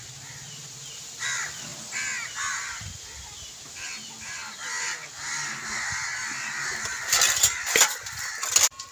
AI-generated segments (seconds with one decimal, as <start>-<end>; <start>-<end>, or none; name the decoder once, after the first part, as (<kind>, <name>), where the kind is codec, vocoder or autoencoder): 0.7-1.7 (vocoder, BigVGAN v2); 6.8-8.9